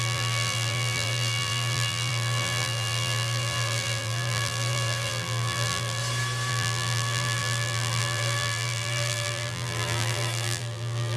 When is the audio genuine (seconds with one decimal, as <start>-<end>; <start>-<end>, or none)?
6.0-6.5